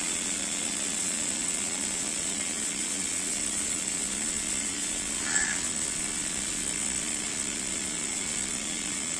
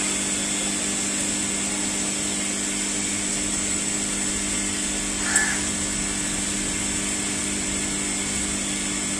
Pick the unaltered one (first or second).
second